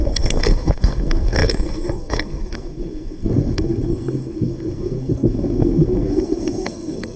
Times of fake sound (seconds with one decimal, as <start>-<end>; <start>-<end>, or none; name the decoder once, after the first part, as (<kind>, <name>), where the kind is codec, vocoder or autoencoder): 0.0-7.2 (codec, SNAC)